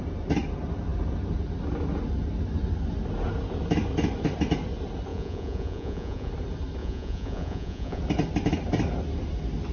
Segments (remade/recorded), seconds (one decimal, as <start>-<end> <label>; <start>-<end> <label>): 0.0-5.1 recorded; 5.1-6.3 remade; 6.3-6.8 recorded; 6.8-8.0 remade; 8.0-9.7 recorded